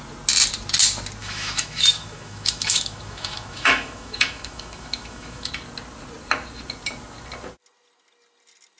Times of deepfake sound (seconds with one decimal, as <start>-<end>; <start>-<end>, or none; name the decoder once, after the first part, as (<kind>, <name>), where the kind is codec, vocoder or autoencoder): 1.2-5.5 (autoencoder, DAC-VAE)